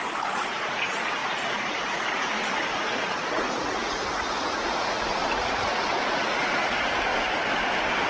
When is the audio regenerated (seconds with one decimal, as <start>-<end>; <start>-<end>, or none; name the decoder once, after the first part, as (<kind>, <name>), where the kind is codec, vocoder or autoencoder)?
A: 0.0-7.1 (vocoder, Vocos)